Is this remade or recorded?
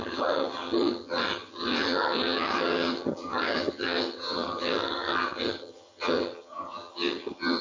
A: remade